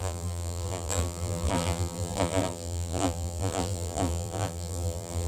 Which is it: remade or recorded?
remade